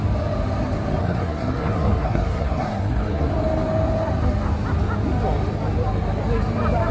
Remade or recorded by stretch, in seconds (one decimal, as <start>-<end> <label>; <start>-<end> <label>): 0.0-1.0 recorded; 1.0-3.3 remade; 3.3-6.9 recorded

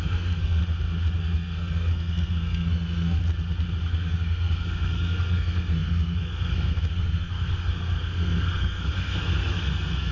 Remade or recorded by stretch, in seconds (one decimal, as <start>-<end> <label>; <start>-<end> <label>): 0.0-0.6 remade; 0.6-1.2 recorded; 1.2-3.2 remade; 3.2-3.8 recorded; 3.8-10.1 remade

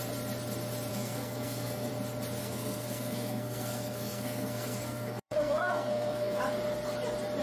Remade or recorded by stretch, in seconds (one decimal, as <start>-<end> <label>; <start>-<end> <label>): 0.0-0.9 recorded; 0.9-1.9 remade; 1.9-2.4 recorded; 2.4-6.4 remade; 6.4-7.4 recorded